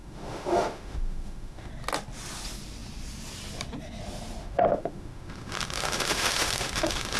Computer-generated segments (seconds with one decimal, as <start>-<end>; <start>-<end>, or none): 0.0-1.7; 4.4-7.2

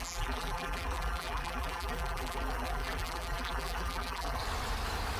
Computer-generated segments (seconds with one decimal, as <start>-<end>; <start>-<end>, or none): 0.0-4.4

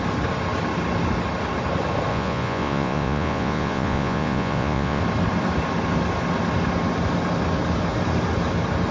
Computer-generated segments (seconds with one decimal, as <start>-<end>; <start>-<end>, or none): 2.1-5.0

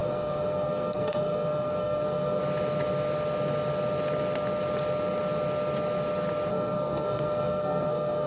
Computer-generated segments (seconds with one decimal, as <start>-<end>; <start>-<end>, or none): 0.0-2.4; 6.5-8.3